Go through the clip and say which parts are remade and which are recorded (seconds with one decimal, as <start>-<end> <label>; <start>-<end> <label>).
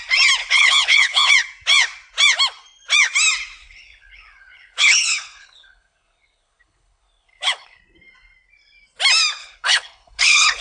0.0-0.4 recorded; 0.4-1.3 remade; 1.3-3.6 recorded; 3.6-7.8 remade; 7.8-9.4 recorded; 9.4-10.6 remade